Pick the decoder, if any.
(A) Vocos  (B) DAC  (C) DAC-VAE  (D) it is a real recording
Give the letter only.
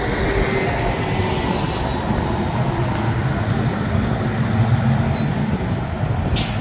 D